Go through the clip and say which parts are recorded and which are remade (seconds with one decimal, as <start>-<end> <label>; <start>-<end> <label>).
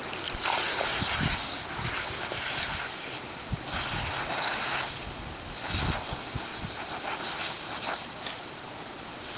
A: 0.0-3.9 recorded; 3.9-4.6 remade; 4.6-9.4 recorded